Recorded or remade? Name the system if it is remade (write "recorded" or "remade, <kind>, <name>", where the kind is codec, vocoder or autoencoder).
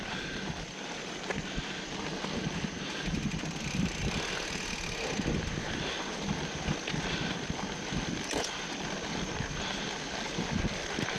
recorded